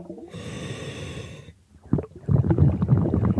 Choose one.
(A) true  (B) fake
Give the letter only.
A